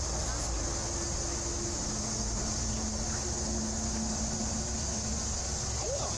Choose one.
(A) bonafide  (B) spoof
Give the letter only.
A